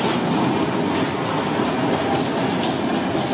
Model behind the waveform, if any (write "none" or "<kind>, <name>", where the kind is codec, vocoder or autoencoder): none